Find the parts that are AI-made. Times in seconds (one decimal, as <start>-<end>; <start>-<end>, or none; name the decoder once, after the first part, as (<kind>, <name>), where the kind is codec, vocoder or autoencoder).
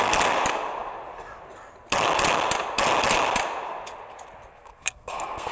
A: 4.5-5.5 (codec, SNAC)